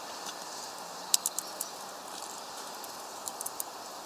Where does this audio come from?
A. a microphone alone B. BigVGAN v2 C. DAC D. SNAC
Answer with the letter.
B